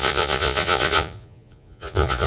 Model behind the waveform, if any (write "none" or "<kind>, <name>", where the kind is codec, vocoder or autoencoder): vocoder, Vocos